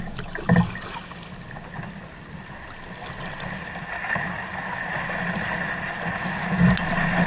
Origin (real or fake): real